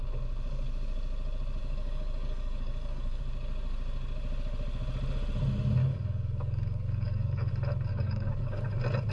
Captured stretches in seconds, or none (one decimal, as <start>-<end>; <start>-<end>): 0.0-1.6; 3.2-5.8; 7.5-7.9; 8.7-9.1

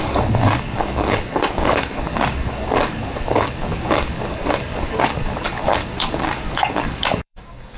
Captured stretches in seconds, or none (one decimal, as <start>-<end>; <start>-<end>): none

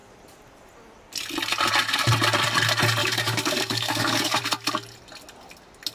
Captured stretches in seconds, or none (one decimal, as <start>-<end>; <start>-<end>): 0.0-3.0; 4.4-5.9

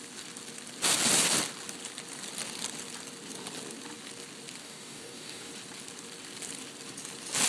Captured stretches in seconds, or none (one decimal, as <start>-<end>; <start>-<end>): 0.0-4.6; 5.5-7.5

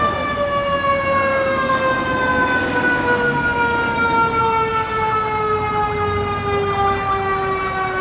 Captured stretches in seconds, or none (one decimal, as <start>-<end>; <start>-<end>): 0.0-1.3; 4.4-8.0

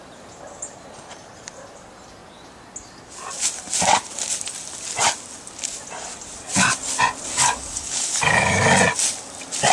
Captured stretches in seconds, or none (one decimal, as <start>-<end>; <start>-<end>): 0.0-7.3; 8.7-9.7

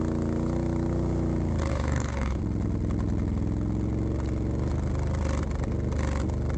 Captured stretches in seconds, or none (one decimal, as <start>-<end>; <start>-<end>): 0.0-1.7; 2.4-6.6